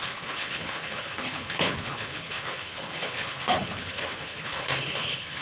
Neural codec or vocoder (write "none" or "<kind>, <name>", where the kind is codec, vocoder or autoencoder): codec, HILCodec